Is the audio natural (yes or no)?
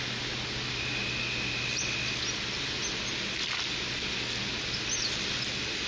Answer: yes